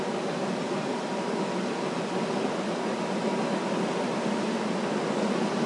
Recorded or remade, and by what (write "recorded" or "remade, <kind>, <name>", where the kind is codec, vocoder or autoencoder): recorded